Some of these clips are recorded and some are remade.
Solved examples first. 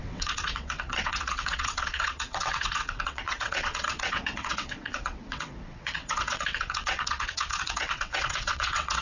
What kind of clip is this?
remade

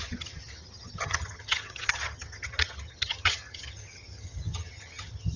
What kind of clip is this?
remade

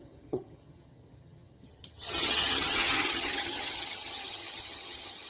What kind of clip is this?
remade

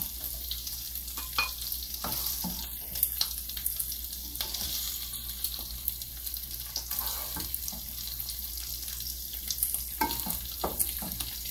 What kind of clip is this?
recorded